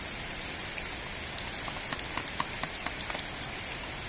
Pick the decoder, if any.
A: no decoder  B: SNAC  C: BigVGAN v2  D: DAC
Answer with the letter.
A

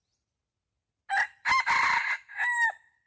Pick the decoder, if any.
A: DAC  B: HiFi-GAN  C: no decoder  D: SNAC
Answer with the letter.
C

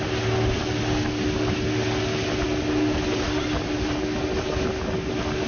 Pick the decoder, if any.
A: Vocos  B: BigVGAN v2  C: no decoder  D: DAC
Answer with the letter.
C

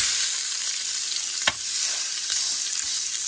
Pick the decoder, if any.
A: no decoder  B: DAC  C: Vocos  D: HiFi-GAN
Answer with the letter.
A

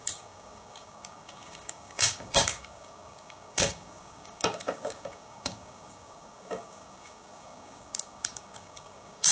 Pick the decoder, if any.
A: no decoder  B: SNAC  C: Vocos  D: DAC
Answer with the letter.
D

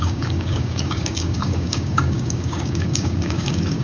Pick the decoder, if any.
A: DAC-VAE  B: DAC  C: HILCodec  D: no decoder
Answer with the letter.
B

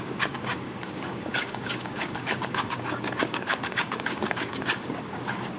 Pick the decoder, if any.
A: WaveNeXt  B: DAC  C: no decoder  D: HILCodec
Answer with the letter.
B